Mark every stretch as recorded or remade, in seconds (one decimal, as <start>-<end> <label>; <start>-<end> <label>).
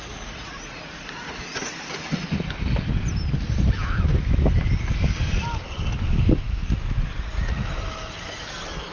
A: 0.0-1.7 remade; 1.7-7.1 recorded; 7.1-7.7 remade; 7.7-8.9 recorded